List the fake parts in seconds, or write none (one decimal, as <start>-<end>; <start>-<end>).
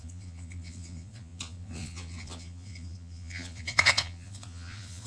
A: 0.0-5.1